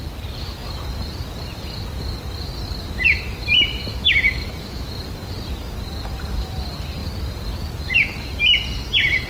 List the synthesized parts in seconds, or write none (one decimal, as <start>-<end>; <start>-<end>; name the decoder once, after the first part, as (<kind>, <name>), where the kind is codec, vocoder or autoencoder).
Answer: 3.9-4.9 (autoencoder, DAC-VAE)